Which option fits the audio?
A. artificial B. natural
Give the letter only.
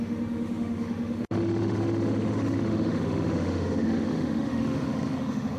A